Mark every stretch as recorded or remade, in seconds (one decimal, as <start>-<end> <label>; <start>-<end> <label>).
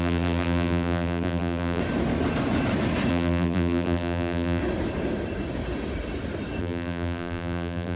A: 0.0-1.8 remade; 1.8-3.1 recorded; 3.1-4.6 remade; 4.6-6.6 recorded; 6.6-8.0 remade